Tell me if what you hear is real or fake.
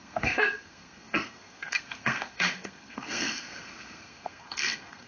fake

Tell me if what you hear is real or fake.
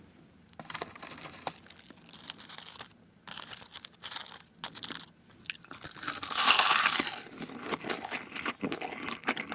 real